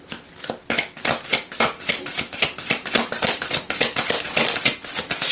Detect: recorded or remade recorded